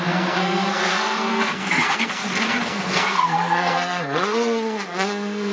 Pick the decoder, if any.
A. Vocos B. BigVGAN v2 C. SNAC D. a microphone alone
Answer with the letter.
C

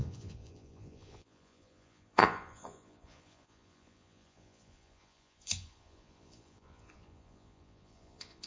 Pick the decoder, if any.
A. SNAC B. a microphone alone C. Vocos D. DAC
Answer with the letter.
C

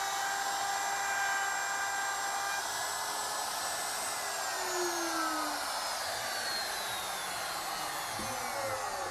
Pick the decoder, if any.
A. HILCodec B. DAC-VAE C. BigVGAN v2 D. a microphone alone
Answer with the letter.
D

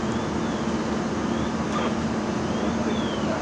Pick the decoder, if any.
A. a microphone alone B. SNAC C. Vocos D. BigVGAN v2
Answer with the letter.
A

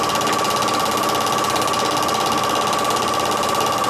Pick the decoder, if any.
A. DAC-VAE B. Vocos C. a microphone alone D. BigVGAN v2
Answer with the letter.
C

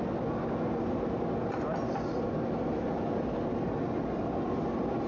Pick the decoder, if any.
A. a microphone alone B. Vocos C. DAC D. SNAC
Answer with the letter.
A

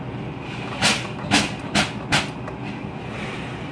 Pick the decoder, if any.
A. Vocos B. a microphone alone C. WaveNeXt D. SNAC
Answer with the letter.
B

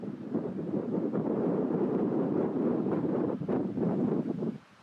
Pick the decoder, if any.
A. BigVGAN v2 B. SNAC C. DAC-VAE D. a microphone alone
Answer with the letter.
A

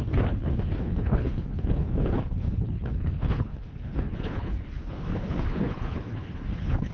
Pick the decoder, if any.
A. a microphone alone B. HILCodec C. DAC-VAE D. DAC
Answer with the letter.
B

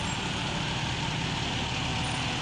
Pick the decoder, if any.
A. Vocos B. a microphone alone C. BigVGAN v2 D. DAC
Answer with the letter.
B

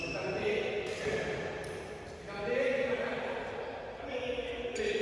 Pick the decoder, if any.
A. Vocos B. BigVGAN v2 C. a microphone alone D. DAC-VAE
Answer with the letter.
C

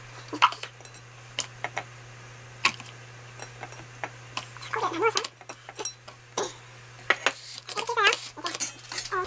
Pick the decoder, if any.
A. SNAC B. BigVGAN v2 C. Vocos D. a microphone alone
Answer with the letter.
D